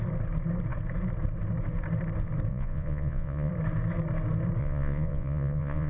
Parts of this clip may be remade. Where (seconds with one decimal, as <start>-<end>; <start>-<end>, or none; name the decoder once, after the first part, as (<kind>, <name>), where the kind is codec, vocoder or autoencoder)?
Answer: 2.5-3.5 (vocoder, Vocos); 4.6-5.9

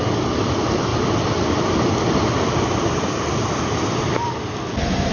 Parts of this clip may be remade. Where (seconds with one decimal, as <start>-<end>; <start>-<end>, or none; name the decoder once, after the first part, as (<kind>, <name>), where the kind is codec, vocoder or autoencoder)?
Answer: none

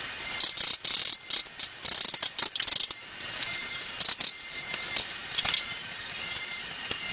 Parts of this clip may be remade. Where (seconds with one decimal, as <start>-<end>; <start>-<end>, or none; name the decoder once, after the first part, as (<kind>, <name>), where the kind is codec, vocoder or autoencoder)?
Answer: none

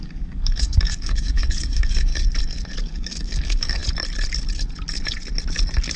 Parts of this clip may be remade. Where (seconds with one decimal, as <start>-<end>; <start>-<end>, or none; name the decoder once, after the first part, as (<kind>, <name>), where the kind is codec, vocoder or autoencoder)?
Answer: 0.0-2.1 (codec, DAC); 2.8-3.8

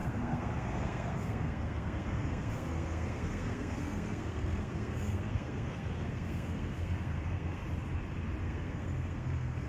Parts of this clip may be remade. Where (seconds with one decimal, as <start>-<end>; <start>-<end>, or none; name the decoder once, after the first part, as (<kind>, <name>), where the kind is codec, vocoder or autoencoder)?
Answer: 0.0-7.6 (codec, SNAC); 8.4-9.7

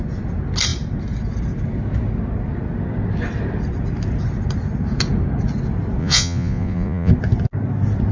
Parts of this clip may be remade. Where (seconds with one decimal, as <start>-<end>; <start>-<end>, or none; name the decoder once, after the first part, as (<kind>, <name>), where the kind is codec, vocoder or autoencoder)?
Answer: 6.0-7.1 (vocoder, Vocos)

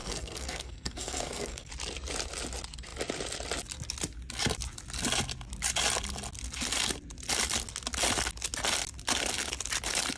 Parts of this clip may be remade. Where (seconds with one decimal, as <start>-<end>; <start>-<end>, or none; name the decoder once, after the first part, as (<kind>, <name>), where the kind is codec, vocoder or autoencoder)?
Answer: 0.0-1.7 (codec, SNAC)